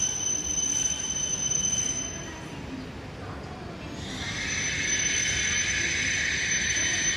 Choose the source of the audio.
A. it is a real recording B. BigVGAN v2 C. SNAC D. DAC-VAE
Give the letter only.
A